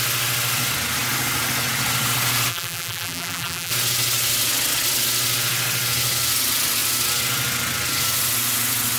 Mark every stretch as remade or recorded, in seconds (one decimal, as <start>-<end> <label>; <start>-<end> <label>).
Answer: 0.0-2.5 recorded; 2.5-3.7 remade; 3.7-9.0 recorded